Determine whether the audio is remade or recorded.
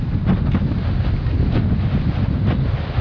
recorded